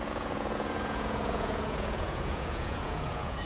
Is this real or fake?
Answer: fake